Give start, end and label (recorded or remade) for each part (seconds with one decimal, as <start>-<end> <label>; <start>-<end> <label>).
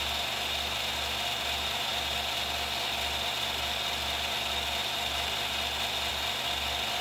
0.0-7.0 recorded